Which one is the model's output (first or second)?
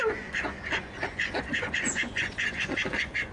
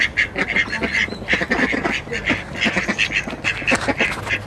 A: first